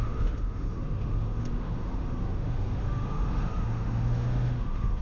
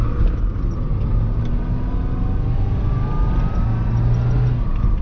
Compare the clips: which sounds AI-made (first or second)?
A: first